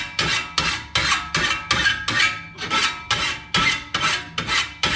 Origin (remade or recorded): recorded